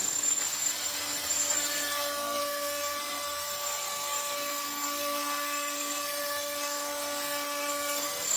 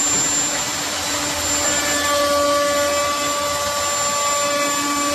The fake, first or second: first